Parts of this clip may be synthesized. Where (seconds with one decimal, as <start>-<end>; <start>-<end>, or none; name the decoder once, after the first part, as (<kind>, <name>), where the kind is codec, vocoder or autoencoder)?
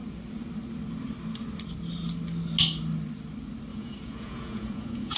3.7-5.2 (vocoder, Vocos)